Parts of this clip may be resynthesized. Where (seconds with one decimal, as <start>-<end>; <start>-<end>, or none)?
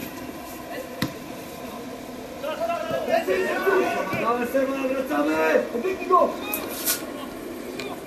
0.0-1.6; 7.2-8.1